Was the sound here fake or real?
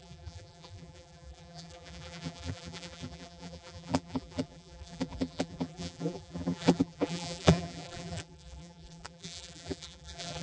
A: fake